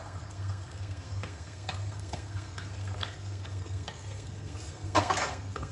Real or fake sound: fake